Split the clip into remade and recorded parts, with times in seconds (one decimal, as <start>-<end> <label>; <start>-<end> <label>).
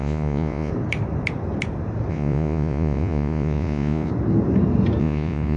0.0-0.7 remade; 0.7-2.1 recorded; 2.1-4.1 remade; 4.1-5.0 recorded; 5.0-5.6 remade